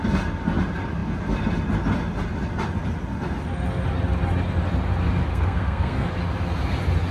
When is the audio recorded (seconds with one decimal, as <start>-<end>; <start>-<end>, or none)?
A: 0.0-5.3; 6.1-7.1